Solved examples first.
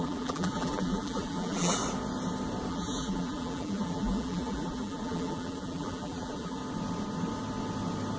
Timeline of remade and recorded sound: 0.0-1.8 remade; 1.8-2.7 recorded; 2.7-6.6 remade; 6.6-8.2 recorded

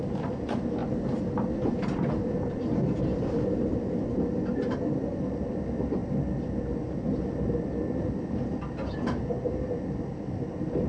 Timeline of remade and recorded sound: 0.0-0.8 recorded; 0.8-5.2 remade; 5.2-10.9 recorded

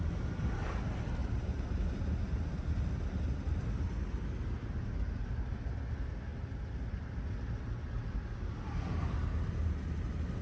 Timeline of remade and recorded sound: 0.0-1.2 recorded; 1.2-2.0 remade; 2.0-4.6 recorded; 4.6-5.3 remade; 5.3-10.4 recorded